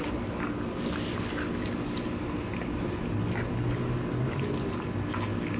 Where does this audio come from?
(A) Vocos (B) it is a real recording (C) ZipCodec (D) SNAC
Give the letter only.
B